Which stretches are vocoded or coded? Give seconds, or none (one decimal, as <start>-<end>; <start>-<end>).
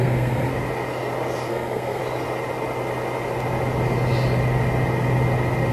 0.0-0.5; 1.5-2.0